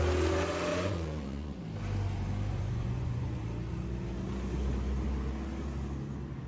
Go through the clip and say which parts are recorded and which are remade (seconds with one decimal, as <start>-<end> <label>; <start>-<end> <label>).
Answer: 0.0-0.7 recorded; 0.7-1.6 remade; 1.6-2.5 recorded; 2.5-3.4 remade; 3.4-6.5 recorded